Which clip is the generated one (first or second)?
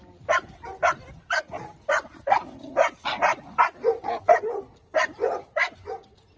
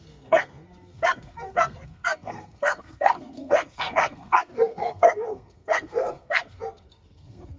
second